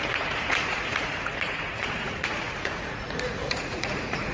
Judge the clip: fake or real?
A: fake